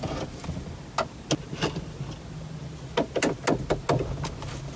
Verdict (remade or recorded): recorded